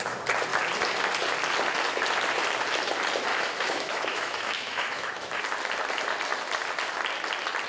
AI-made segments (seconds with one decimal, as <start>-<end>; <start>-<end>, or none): 3.3-5.4